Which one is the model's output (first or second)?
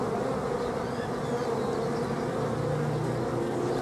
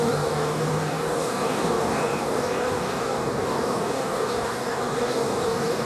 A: second